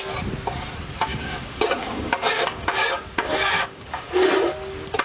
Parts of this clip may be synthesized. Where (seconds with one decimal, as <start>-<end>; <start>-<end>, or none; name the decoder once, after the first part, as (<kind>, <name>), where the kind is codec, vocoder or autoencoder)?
1.1-4.1 (codec, DAC)